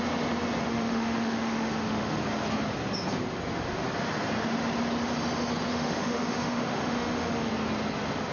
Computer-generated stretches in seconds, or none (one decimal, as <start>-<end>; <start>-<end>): 0.7-2.2; 5.7-7.5

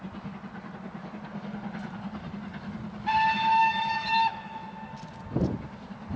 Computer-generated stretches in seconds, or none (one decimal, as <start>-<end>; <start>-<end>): 3.6-4.6

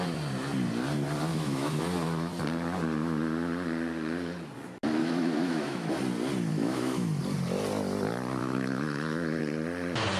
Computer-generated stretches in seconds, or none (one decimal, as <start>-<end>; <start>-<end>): 1.3-1.8; 5.0-5.9; 6.5-7.2; 8.4-9.4

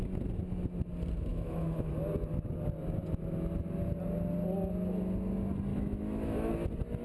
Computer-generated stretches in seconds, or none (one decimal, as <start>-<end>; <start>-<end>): 1.3-1.9; 5.7-6.5